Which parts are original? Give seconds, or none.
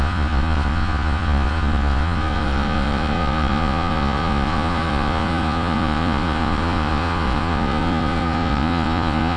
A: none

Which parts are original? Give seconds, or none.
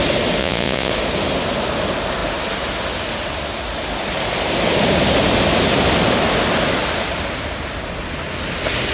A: 0.0-0.4; 0.9-8.9